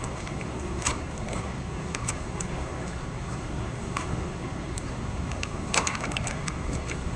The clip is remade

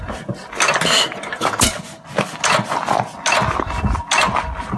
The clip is recorded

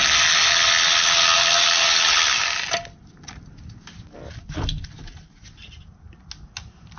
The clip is recorded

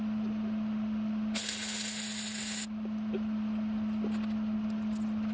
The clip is recorded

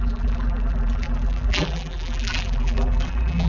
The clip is remade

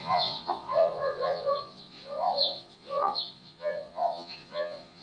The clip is remade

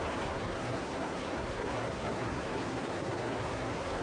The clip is remade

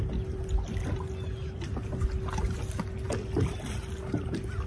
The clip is recorded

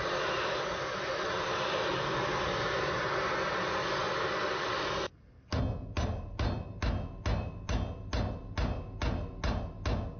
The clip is recorded